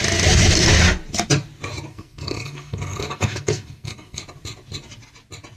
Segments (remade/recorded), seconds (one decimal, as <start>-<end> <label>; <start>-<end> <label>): 0.0-1.9 recorded; 1.9-4.2 remade; 4.2-5.6 recorded